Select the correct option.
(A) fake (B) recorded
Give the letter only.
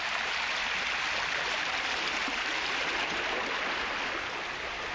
B